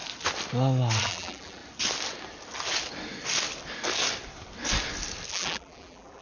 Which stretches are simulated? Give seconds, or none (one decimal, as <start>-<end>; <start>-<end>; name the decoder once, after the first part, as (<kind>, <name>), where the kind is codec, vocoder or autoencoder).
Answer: 1.0-1.6 (vocoder, BigVGAN v2); 5.3-6.2